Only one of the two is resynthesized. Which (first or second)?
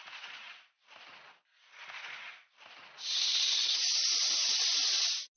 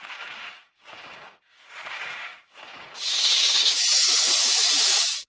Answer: second